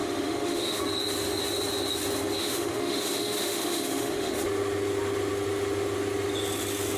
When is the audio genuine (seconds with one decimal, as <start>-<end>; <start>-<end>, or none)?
0.8-2.4; 4.3-7.0